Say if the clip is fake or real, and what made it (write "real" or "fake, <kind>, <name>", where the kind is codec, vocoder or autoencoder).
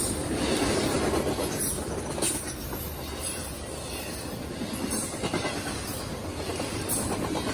real